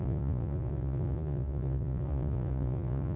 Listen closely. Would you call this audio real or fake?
fake